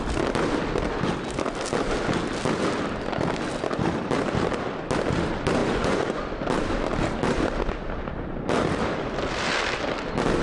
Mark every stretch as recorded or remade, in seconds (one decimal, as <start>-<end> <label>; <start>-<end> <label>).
0.0-5.6 recorded; 5.6-6.2 remade; 6.2-10.4 recorded